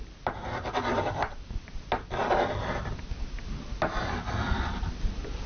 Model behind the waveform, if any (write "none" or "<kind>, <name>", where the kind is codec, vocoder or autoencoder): none